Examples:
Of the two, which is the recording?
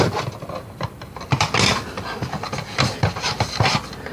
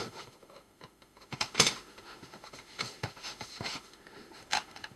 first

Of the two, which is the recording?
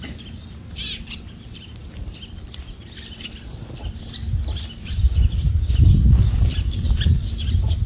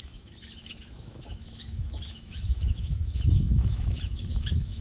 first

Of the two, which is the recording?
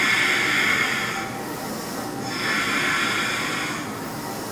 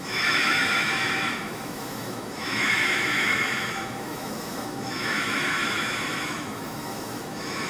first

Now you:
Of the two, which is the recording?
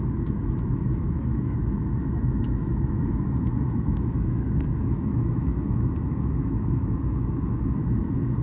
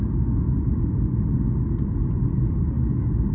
second